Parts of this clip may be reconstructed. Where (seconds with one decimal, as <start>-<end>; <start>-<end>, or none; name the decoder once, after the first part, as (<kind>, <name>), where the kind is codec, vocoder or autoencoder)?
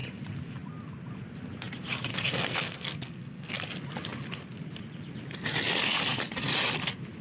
2.1-3.5 (codec, SNAC)